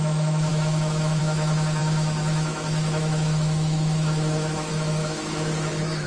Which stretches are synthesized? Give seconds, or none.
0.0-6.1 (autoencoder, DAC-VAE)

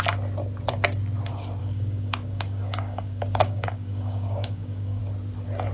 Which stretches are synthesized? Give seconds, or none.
1.6-5.0 (codec, DAC)

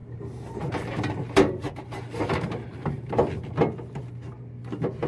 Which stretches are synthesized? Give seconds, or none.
0.0-3.1 (vocoder, BigVGAN v2)

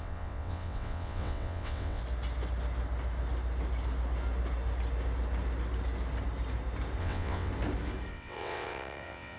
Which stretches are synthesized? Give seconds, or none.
0.0-2.0 (vocoder, WaveNeXt); 7.0-7.5; 8.1-9.4